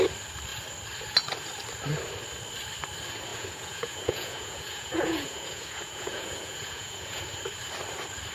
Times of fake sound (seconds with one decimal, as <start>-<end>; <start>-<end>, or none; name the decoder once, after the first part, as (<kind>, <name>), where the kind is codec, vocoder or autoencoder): 3.3-7.2 (vocoder, Vocos)